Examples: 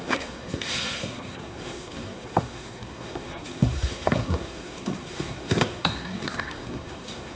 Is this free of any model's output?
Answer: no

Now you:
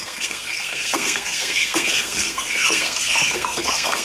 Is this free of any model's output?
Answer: no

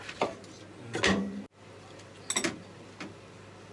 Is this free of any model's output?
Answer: yes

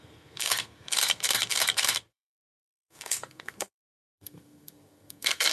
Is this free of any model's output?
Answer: no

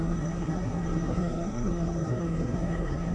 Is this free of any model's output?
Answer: no